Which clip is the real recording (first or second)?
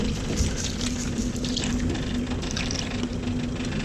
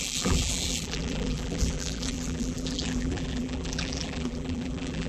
first